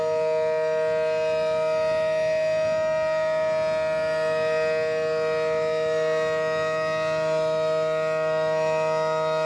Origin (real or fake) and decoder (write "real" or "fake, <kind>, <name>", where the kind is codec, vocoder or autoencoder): real